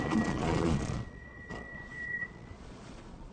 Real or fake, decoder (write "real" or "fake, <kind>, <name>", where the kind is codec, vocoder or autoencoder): fake, vocoder, Vocos